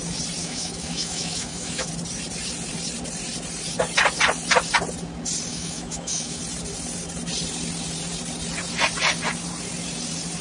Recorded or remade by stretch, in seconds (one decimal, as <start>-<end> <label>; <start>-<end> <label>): 0.0-0.4 recorded; 0.4-1.9 remade; 1.9-5.5 recorded; 5.5-6.4 remade; 6.4-10.4 recorded